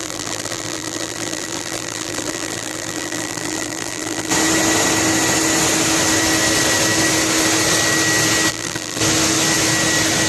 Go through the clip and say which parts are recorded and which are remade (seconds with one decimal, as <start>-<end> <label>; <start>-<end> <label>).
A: 0.0-4.3 remade; 4.3-8.5 recorded; 8.5-9.0 remade; 9.0-10.3 recorded